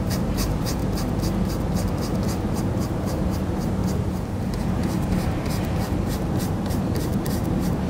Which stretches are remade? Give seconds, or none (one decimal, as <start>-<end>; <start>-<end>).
0.0-0.8; 2.6-3.8; 4.6-7.9